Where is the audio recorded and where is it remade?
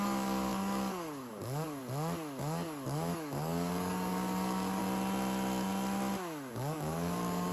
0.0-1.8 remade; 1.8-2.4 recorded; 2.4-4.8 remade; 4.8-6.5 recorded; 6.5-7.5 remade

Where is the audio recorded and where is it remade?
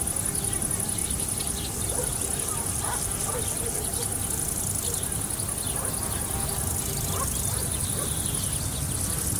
0.0-9.4 recorded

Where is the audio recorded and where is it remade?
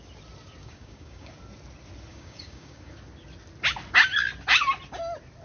0.0-0.6 recorded; 0.6-1.3 remade; 1.3-2.1 recorded; 2.1-2.9 remade; 2.9-5.4 recorded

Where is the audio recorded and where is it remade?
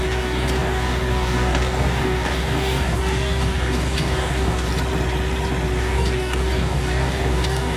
0.0-4.7 remade; 4.7-5.8 recorded; 5.8-7.8 remade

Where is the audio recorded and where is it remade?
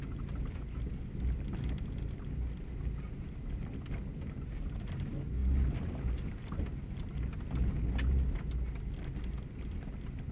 0.0-10.3 recorded